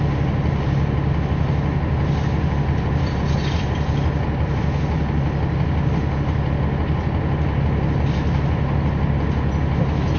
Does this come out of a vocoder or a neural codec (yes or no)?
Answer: no